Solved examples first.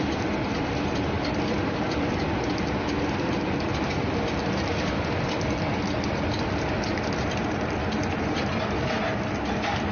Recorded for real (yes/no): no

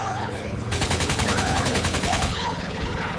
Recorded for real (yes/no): no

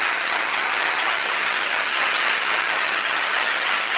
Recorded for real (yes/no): no